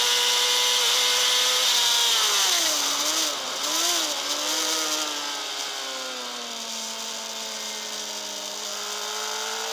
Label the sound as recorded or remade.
recorded